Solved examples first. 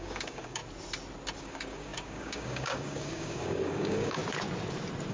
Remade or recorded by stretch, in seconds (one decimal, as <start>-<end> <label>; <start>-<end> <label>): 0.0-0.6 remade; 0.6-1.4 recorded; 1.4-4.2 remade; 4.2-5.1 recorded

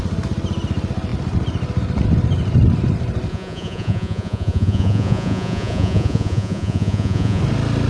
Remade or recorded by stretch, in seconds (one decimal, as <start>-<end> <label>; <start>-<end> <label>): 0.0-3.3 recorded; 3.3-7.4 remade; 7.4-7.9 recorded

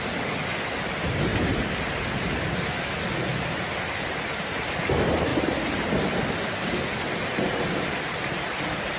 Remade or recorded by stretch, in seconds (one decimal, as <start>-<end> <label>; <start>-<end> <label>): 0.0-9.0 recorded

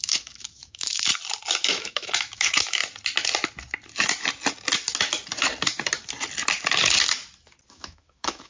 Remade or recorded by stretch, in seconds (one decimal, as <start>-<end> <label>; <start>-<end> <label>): 0.0-1.1 remade; 1.1-1.6 recorded; 1.6-2.8 remade; 2.8-7.7 recorded; 7.7-8.5 remade

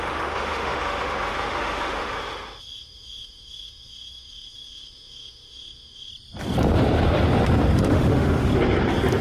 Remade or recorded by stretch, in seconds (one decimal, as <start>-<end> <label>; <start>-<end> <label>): 0.0-6.1 remade; 6.1-7.9 recorded; 7.9-8.5 remade; 8.5-9.2 recorded

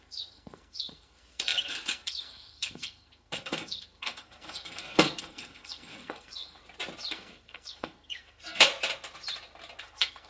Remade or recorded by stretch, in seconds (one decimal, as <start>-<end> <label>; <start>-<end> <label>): 0.0-6.6 remade; 6.6-7.1 recorded; 7.1-8.7 remade; 8.7-9.8 recorded; 9.8-10.3 remade

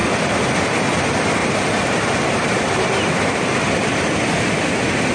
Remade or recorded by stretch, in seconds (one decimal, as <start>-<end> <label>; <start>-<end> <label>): 0.0-0.5 remade; 0.5-1.4 recorded; 1.4-4.5 remade; 4.5-5.1 recorded